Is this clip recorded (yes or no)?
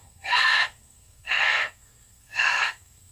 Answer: no